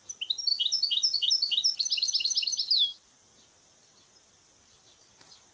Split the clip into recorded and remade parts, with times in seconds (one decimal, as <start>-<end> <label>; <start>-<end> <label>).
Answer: 0.0-5.5 recorded